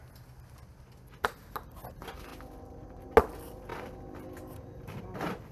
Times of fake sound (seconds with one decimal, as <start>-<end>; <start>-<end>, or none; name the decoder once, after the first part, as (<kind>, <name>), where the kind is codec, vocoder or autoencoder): none